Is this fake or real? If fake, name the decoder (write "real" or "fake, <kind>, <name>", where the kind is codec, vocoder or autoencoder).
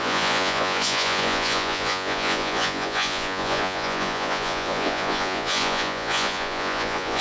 fake, vocoder, Vocos